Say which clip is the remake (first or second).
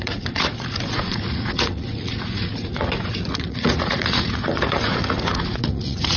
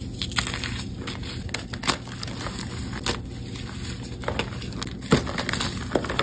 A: first